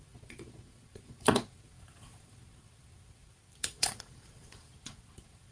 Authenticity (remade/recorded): remade